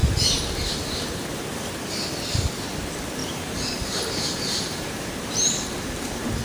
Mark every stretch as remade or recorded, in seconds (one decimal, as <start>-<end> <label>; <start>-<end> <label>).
0.0-3.2 recorded; 3.2-6.4 remade